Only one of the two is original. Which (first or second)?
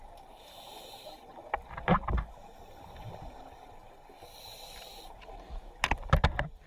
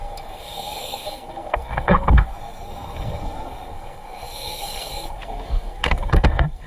first